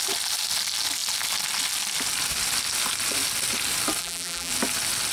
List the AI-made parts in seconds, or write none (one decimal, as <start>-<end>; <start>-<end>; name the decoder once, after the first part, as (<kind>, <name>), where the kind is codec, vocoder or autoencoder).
4.0-4.5 (vocoder, BigVGAN v2)